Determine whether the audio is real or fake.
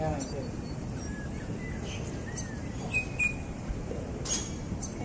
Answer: real